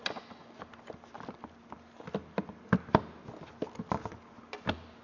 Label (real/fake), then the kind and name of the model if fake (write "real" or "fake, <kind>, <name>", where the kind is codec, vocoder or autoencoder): real